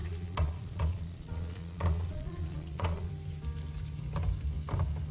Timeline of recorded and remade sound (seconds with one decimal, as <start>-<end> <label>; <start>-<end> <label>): 0.0-3.1 remade; 3.1-5.1 recorded